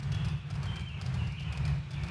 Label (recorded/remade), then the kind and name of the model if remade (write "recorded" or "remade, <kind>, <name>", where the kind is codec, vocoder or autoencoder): remade, vocoder, BigVGAN v2